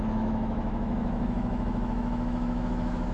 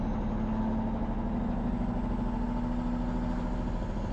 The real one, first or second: second